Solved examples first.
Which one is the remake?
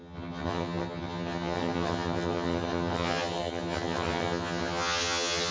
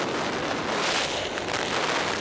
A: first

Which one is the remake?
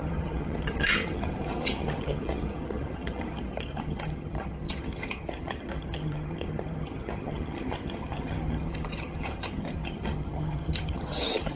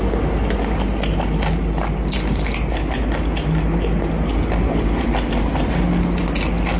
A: first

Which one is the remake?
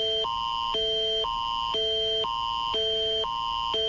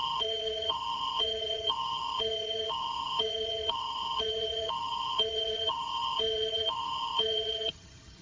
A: second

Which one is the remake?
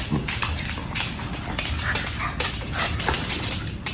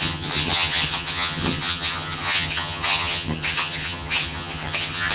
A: second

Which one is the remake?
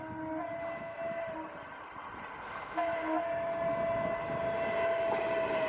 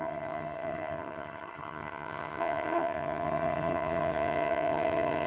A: second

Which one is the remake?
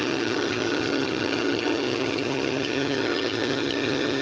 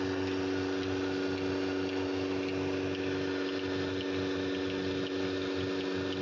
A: first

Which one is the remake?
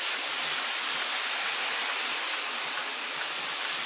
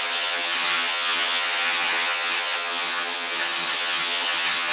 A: second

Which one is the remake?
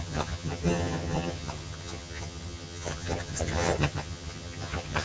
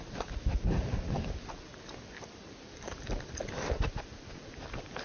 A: first